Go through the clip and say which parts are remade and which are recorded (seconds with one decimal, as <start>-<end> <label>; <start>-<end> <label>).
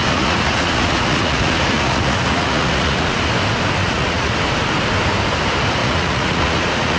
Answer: 0.0-3.2 remade; 3.2-3.8 recorded; 3.8-4.3 remade; 4.3-5.8 recorded; 5.8-7.0 remade